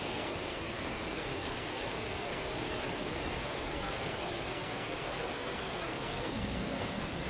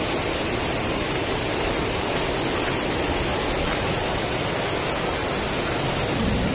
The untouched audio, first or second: second